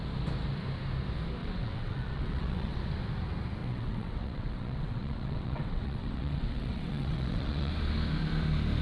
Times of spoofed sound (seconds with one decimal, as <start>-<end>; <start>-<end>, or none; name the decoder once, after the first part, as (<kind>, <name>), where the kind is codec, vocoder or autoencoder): 1.4-2.8 (vocoder, WaveNeXt); 3.6-7.7